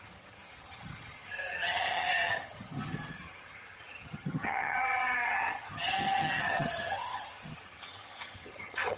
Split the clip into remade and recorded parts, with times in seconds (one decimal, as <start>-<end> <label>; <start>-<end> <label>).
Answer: 0.0-9.0 remade